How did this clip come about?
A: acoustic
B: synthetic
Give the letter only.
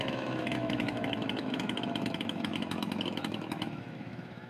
B